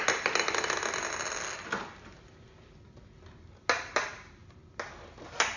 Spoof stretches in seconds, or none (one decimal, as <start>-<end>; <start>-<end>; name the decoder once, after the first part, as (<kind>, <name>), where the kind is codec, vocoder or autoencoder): none